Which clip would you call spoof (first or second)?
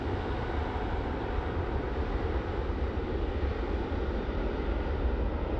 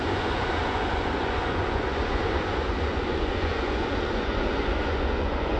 second